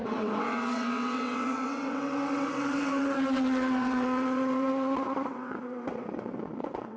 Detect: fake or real fake